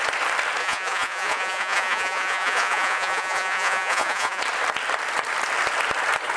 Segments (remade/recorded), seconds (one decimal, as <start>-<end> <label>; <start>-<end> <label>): 0.0-0.6 recorded; 0.6-4.4 remade; 4.4-6.4 recorded